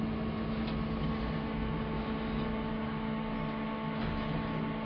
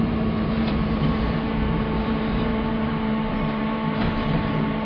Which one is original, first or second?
first